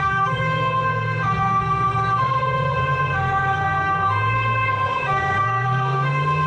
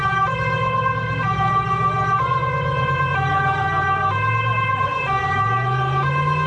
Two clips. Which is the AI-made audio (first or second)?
first